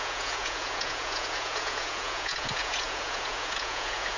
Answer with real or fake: fake